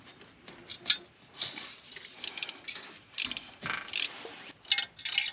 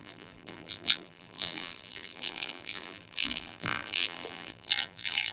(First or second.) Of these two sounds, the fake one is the second